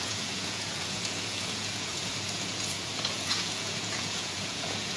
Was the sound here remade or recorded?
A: remade